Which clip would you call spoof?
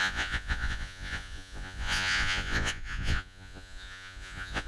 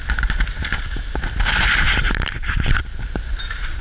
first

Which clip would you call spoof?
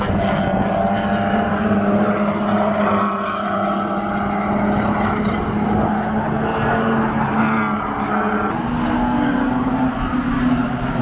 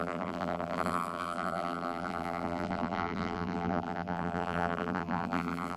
second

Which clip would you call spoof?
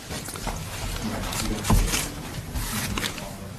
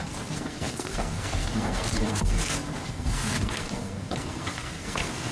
second